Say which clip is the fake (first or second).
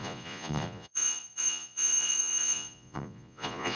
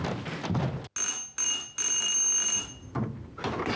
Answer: first